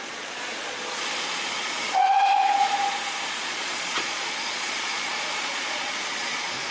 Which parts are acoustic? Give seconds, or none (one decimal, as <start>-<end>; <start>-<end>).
none

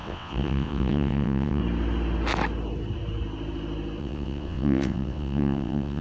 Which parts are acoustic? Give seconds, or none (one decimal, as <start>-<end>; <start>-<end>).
1.6-4.0

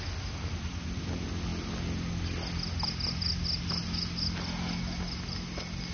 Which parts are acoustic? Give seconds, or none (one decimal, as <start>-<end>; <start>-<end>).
0.0-5.9

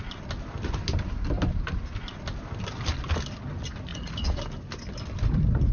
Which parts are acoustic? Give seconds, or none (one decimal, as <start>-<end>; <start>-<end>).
0.0-3.9; 4.4-5.7